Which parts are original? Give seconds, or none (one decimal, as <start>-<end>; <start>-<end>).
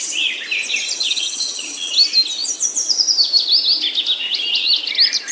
0.0-1.0; 1.9-5.3